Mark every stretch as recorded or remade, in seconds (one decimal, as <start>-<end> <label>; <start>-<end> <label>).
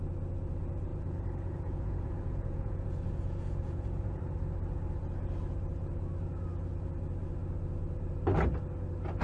0.0-0.9 recorded; 0.9-4.2 remade; 4.2-9.2 recorded